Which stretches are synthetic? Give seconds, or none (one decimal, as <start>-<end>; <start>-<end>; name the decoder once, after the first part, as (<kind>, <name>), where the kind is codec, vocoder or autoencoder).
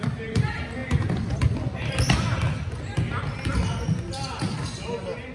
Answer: none